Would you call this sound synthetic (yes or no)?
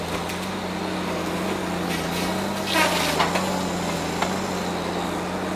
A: no